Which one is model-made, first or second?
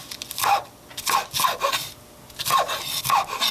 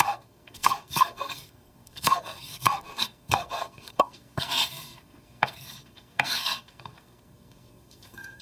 second